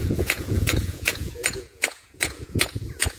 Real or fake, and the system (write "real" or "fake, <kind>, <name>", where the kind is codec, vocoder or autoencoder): fake, vocoder, Vocos